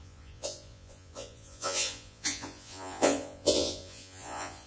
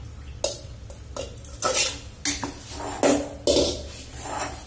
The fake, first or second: first